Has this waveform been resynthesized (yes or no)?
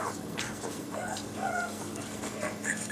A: yes